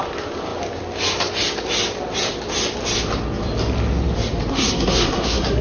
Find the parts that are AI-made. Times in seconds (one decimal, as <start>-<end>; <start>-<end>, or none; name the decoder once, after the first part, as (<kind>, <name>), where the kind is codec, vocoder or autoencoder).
4.5-5.6 (codec, SNAC)